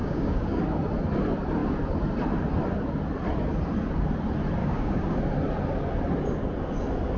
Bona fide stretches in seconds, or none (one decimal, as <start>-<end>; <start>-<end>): 0.6-4.6; 5.2-7.2

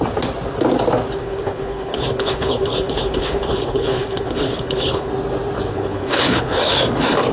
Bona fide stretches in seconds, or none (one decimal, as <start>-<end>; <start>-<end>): 0.0-1.2; 5.1-5.7; 6.7-7.3

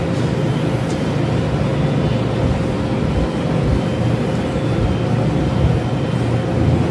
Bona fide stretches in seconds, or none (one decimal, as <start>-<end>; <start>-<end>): 0.0-6.9

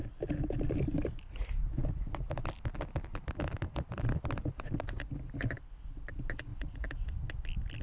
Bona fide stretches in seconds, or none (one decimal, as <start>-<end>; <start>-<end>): 0.0-6.5; 7.1-7.8

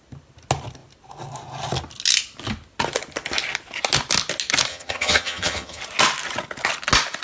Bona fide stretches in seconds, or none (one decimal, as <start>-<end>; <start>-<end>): 0.0-4.7; 5.8-7.2

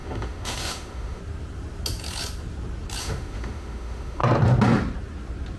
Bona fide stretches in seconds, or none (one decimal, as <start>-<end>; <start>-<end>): 1.2-3.0; 4.2-5.6

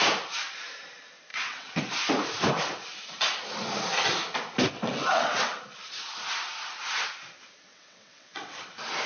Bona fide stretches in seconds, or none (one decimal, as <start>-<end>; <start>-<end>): 0.0-1.3; 1.8-4.8; 5.6-7.7; 8.7-9.1